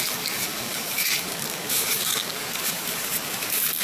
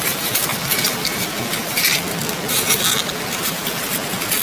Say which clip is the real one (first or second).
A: second